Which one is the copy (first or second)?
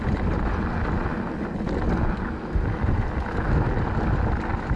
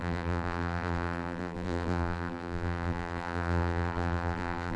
second